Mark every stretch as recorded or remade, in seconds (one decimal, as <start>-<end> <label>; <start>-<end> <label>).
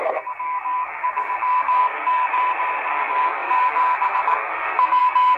0.0-2.3 remade; 2.3-2.9 recorded; 2.9-5.4 remade